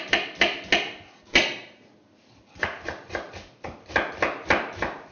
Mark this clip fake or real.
real